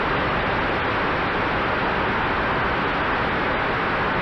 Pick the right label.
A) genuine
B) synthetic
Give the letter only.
A